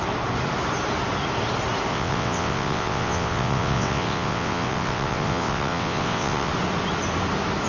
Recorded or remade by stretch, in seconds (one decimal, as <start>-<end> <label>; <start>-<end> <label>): 0.0-1.9 recorded; 1.9-6.5 remade; 6.5-7.7 recorded